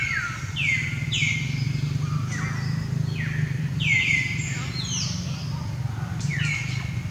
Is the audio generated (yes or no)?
no